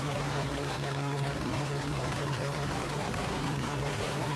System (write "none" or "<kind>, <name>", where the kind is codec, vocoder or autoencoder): codec, SNAC